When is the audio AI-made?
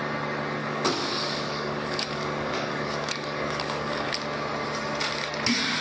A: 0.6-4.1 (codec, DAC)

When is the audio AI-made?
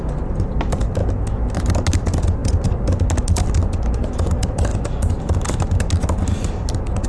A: none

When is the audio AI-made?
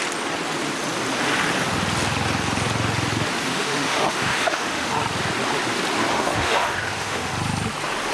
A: 3.5-4.9 (autoencoder, DAC-VAE); 6.1-7.3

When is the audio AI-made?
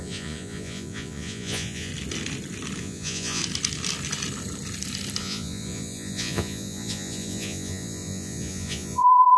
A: 0.0-1.9 (vocoder, Vocos); 2.8-3.4; 5.2-9.4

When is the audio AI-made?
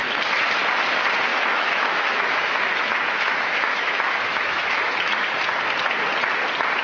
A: 1.3-5.4 (autoencoder, DAC-VAE)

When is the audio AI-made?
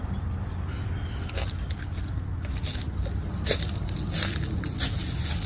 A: none